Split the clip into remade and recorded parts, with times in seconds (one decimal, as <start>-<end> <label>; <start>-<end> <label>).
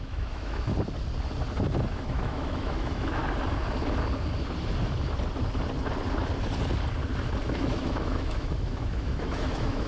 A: 0.0-0.7 remade; 0.7-1.9 recorded; 1.9-3.2 remade; 3.2-7.4 recorded; 7.4-9.9 remade